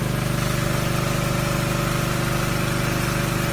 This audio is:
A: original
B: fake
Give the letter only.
A